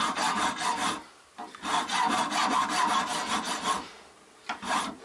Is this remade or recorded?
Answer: recorded